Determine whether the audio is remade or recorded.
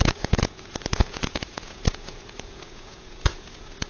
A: remade